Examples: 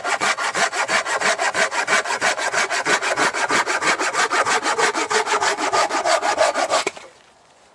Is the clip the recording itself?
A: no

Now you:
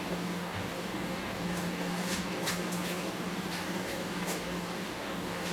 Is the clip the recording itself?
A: no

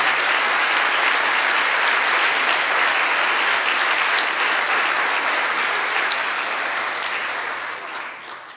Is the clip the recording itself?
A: yes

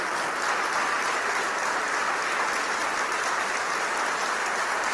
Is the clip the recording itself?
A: yes